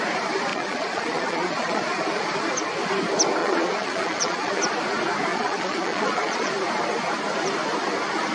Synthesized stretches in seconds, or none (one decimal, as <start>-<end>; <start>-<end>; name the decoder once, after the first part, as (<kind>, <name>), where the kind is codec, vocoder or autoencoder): 0.5-1.8 (vocoder, Vocos); 3.4-4.6; 5.3-6.5